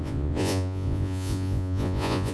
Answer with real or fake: fake